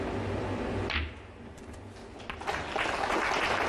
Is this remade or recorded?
recorded